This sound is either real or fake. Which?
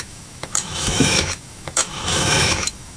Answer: fake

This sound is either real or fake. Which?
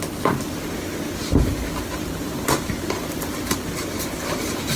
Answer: real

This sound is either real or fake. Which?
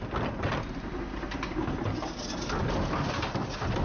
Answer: real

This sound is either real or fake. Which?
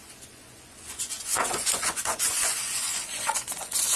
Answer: fake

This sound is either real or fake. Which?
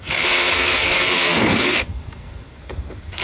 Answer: fake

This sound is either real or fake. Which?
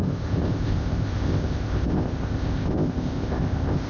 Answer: fake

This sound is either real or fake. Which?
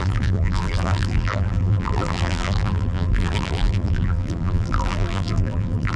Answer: fake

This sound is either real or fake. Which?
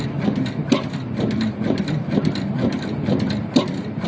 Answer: real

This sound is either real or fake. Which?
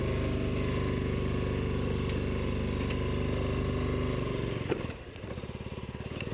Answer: real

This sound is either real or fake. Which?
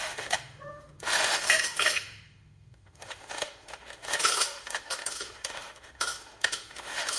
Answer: fake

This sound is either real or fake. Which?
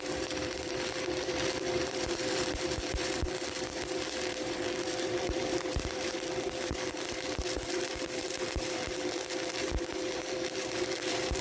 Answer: fake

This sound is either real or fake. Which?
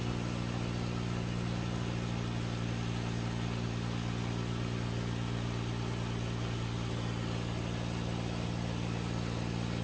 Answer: real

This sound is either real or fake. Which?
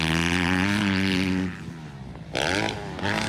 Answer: real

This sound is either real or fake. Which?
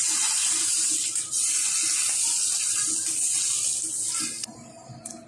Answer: real